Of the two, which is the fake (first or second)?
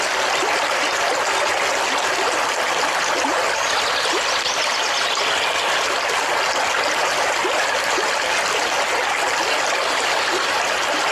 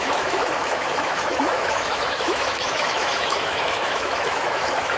second